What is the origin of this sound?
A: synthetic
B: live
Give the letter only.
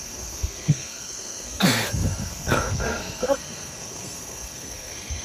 A